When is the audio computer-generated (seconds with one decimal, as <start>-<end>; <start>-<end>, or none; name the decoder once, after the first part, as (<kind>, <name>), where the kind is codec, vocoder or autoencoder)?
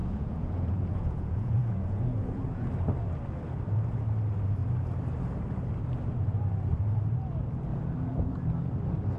0.0-2.7 (vocoder, Vocos); 7.7-8.5